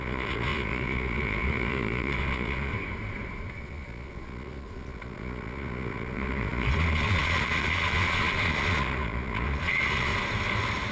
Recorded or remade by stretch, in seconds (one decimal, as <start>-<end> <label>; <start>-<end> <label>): 0.0-2.7 remade; 2.7-3.5 recorded; 3.5-10.1 remade; 10.1-10.9 recorded